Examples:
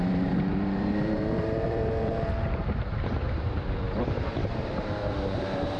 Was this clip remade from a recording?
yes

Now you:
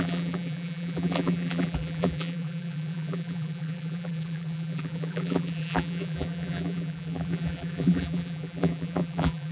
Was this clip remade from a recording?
yes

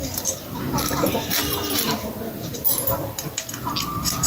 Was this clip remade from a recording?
yes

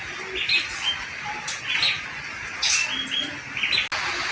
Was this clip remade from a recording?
no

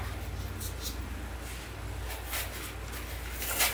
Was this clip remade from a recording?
no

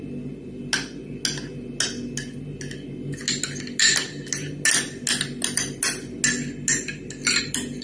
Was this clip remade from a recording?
no